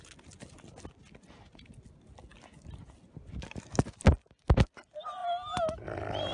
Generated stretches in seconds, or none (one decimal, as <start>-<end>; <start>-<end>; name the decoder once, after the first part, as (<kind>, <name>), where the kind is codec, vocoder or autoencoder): none

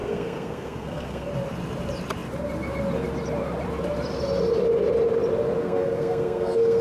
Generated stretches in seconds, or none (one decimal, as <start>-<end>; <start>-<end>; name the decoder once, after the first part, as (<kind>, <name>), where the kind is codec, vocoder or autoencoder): 0.0-1.3 (codec, SNAC); 5.6-6.8